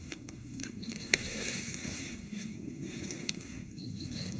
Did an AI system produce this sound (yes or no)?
yes